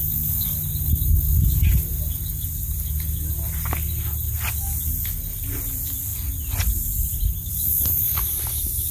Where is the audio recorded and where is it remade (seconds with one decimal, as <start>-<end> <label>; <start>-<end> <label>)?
0.0-8.9 recorded